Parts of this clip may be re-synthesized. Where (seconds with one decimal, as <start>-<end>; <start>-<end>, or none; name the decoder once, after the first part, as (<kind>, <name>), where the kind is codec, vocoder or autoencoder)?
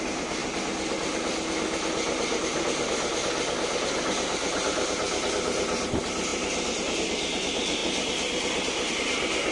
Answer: none